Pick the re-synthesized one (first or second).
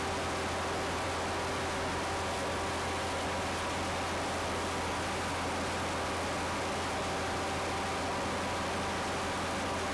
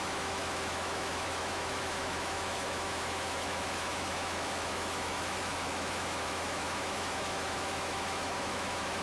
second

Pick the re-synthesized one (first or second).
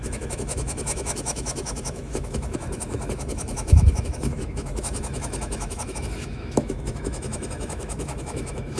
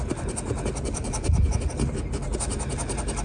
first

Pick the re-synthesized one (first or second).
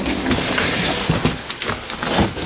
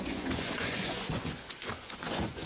second